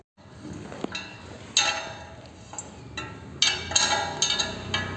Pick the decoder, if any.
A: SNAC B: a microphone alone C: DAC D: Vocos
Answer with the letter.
B